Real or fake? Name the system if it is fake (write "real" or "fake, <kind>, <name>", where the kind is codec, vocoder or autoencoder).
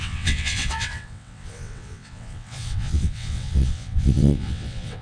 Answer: fake, vocoder, WaveNeXt